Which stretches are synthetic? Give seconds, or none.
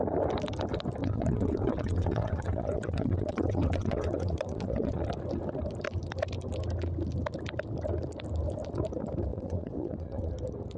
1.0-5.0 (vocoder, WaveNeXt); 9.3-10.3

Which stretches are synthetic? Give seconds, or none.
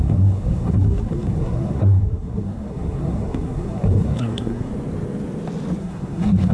0.0-4.7 (codec, SNAC); 5.8-6.5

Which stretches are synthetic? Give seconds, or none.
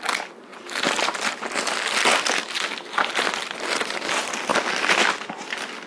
0.5-1.3 (vocoder, BigVGAN v2); 4.5-5.1